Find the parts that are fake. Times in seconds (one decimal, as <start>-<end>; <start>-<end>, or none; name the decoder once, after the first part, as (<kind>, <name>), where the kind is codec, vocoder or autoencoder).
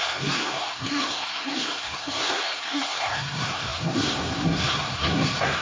0.0-5.6 (codec, SNAC)